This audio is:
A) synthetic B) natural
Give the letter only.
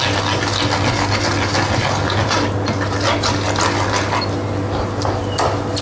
B